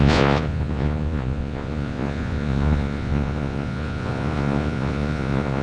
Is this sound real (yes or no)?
no